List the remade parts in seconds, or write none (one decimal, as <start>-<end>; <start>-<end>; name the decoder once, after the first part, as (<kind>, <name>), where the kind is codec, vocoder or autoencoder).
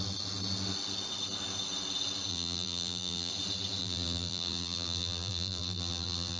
2.3-3.3 (vocoder, BigVGAN v2); 3.8-6.4